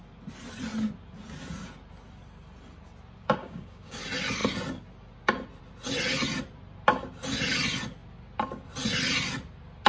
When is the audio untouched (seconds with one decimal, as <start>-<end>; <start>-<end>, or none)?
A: 0.0-3.4; 4.0-9.9